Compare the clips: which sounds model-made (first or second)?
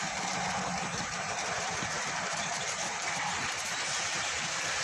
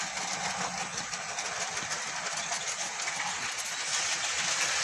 first